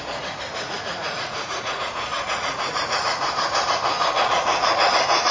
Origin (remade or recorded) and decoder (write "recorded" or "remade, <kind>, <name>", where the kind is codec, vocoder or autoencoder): remade, vocoder, Vocos